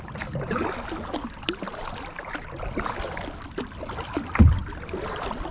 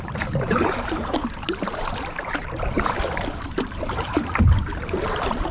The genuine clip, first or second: first